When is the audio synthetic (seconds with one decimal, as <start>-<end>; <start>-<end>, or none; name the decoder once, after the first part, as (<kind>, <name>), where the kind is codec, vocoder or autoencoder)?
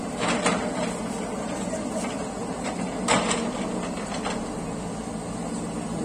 none